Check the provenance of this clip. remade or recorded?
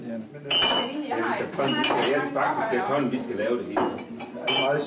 recorded